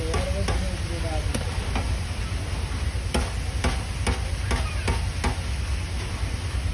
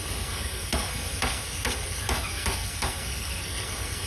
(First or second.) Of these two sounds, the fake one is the second